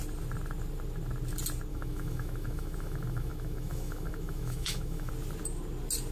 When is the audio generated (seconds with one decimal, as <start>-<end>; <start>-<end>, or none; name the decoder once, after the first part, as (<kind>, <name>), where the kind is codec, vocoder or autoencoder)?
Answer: 1.7-5.1 (autoencoder, DAC-VAE)